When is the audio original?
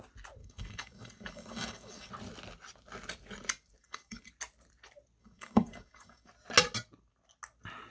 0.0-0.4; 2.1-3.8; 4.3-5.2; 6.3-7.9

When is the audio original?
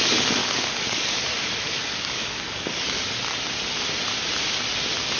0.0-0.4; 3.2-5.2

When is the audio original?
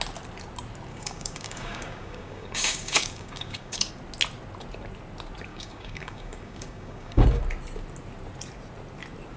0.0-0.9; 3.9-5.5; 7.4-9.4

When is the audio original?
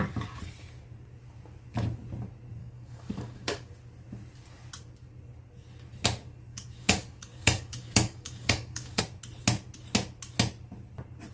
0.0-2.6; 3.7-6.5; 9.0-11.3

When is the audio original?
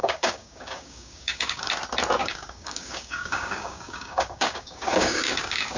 1.7-2.2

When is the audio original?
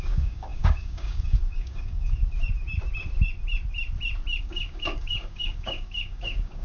2.2-4.4